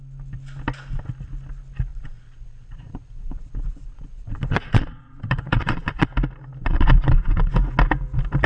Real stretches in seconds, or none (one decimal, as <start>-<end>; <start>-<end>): 0.0-1.9; 6.1-6.6; 7.5-8.5